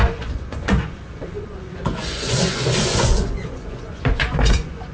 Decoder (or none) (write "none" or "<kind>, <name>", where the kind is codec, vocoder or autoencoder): vocoder, Vocos